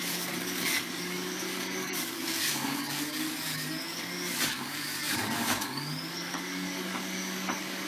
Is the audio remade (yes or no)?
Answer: yes